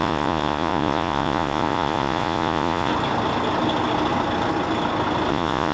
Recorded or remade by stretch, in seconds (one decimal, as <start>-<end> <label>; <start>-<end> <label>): 0.0-2.9 remade; 2.9-5.3 recorded; 5.3-5.7 remade